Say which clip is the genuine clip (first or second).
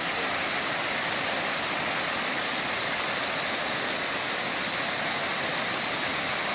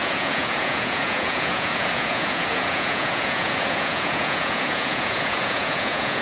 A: first